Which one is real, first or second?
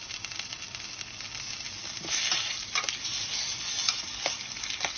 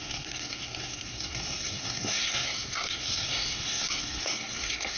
first